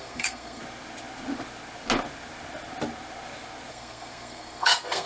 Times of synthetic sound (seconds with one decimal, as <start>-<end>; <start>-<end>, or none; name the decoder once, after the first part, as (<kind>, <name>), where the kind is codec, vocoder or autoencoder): 0.0-0.6 (codec, SNAC); 3.7-5.1